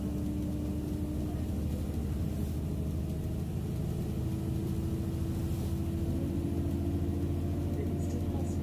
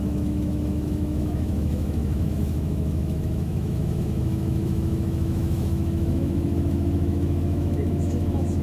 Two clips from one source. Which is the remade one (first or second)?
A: second